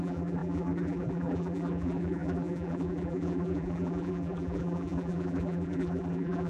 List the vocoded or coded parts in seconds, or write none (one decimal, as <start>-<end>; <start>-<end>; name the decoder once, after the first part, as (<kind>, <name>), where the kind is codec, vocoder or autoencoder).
0.0-6.5 (vocoder, BigVGAN v2)